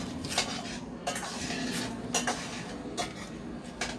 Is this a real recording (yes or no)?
yes